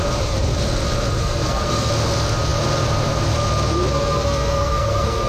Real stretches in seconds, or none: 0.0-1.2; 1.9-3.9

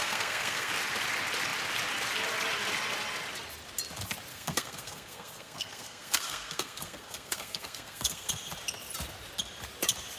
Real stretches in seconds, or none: 0.7-4.3; 8.3-10.2

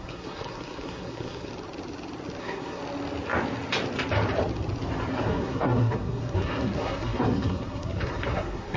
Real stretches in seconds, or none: 1.5-2.4; 2.8-5.1

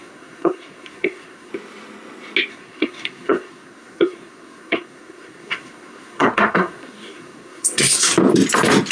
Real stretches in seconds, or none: 1.5-2.5; 8.1-8.9

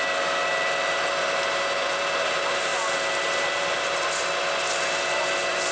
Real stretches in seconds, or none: 0.0-5.7

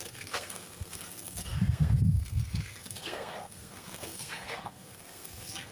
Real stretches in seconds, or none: none